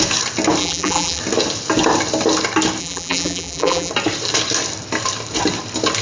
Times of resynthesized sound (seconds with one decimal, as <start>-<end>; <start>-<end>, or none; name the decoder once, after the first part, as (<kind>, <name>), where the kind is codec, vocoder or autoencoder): 0.6-1.2 (vocoder, BigVGAN v2); 2.8-3.9